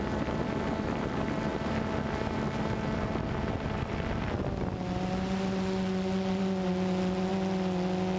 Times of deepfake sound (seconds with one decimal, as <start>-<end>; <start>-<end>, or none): none